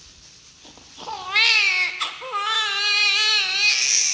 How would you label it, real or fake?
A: real